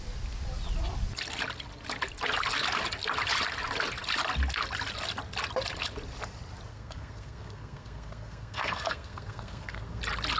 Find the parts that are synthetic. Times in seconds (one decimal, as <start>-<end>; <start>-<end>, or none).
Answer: 6.7-10.0